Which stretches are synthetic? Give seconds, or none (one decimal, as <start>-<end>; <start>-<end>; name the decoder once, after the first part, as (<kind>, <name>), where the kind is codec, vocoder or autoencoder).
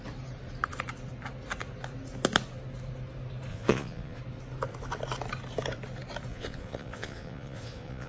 3.5-4.2 (vocoder, Vocos); 6.3-8.1